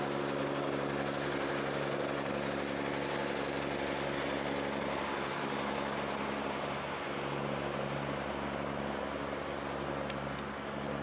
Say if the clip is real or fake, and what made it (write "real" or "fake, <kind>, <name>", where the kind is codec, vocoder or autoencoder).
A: real